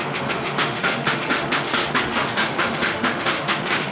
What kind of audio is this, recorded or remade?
remade